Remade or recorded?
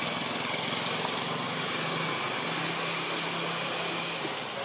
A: recorded